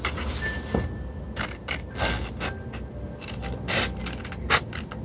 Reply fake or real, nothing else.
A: real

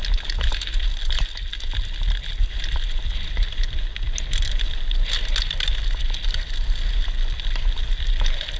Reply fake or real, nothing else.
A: real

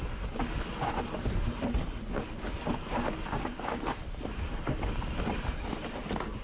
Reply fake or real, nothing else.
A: real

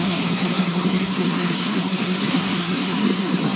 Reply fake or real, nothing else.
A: fake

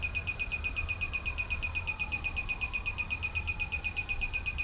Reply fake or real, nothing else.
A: real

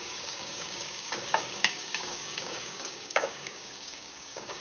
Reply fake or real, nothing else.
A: fake